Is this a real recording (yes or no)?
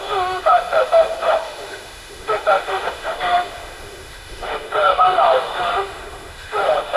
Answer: no